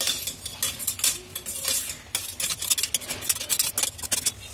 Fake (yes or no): no